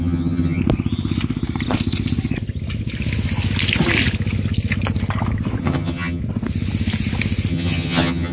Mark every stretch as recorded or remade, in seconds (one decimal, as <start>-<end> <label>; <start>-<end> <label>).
0.0-0.6 remade; 0.6-5.6 recorded; 5.6-6.2 remade; 6.2-7.5 recorded; 7.5-8.3 remade